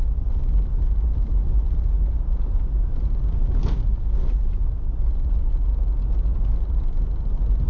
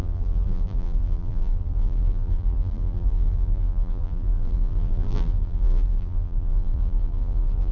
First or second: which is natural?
first